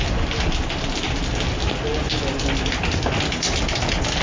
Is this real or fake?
real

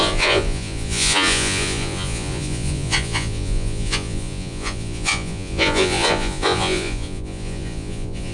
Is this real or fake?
fake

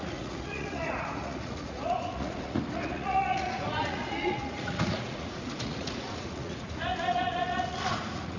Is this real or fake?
fake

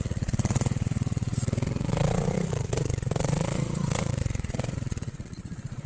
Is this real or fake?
fake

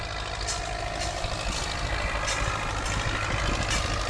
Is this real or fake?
real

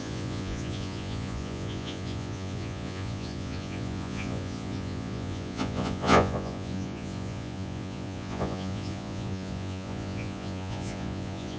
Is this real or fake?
fake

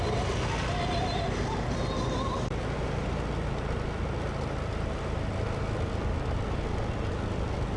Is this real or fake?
real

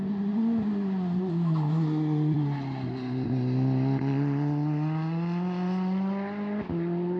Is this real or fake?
real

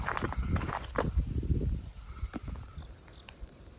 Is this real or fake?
fake